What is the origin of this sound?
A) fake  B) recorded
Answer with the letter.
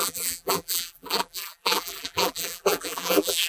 A